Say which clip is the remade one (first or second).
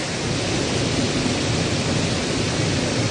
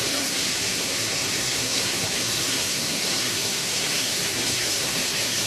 second